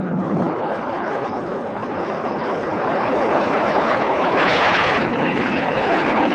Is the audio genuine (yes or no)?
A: no